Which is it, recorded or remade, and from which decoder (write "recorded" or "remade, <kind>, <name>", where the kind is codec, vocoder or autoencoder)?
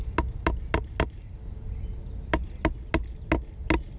recorded